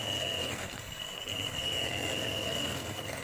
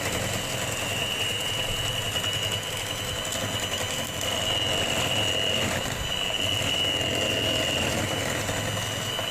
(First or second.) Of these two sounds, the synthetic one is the first